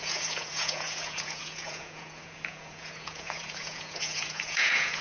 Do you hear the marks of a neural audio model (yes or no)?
yes